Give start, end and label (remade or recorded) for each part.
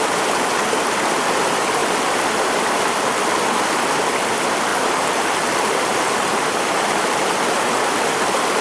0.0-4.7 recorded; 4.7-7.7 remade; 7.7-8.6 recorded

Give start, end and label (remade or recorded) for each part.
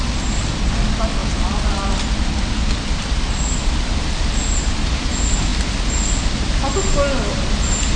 0.0-8.0 recorded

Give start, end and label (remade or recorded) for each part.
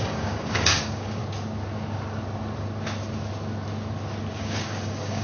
0.0-1.2 remade; 1.2-4.3 recorded; 4.3-5.2 remade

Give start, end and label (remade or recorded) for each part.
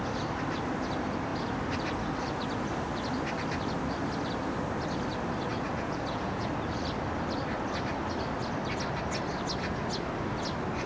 0.0-5.5 recorded; 5.5-6.5 remade; 6.5-10.9 recorded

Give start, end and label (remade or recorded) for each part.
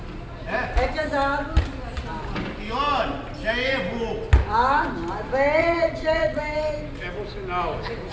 0.0-5.6 recorded; 5.6-6.4 remade; 6.4-8.1 recorded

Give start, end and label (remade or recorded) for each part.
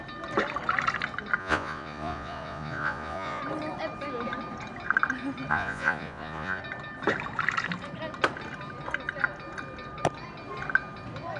0.0-1.4 recorded; 1.4-3.4 remade; 3.4-5.5 recorded; 5.5-6.6 remade; 6.6-11.4 recorded